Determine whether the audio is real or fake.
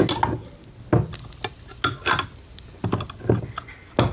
real